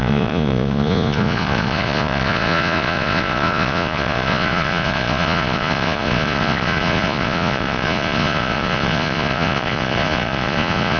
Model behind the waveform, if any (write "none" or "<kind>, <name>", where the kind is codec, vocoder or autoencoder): vocoder, Vocos